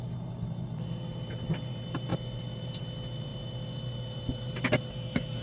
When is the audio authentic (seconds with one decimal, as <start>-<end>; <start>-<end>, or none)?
0.0-5.4